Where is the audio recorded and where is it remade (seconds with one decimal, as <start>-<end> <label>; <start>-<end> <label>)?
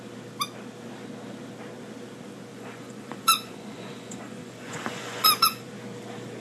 0.0-2.5 recorded; 2.5-5.7 remade; 5.7-6.4 recorded